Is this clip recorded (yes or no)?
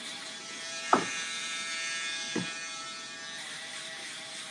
no